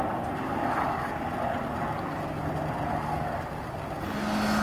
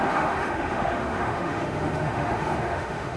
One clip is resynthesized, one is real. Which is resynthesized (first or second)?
second